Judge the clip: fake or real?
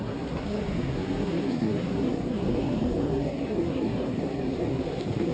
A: fake